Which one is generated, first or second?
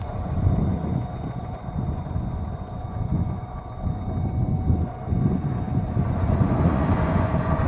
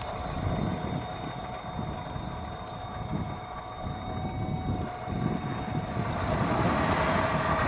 first